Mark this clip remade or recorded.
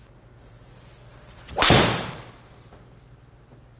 recorded